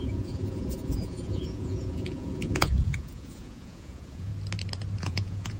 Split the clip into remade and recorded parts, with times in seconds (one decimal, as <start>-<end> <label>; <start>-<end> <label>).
0.0-4.3 remade; 4.3-5.0 recorded; 5.0-5.6 remade